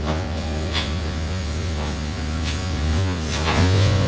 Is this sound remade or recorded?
remade